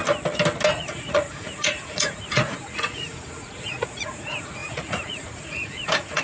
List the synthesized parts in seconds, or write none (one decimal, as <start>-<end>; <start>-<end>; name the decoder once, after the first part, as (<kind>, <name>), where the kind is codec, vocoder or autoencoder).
0.7-6.2 (vocoder, Vocos)